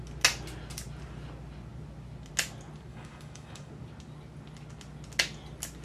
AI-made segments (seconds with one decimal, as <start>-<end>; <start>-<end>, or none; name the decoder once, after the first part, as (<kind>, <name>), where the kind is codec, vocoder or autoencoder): 2.9-3.7 (codec, DAC)